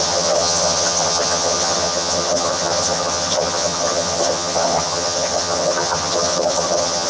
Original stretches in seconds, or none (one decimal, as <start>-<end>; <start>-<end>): none